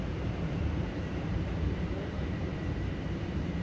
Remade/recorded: remade